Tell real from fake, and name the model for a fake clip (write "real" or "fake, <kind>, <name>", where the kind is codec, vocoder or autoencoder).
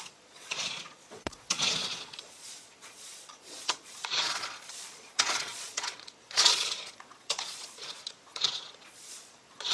fake, vocoder, Vocos